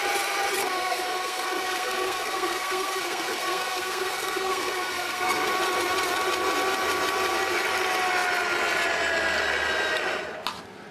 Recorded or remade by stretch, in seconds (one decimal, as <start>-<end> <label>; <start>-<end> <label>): 0.0-0.6 recorded; 0.6-5.5 remade; 5.5-10.9 recorded